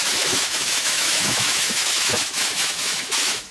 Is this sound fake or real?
fake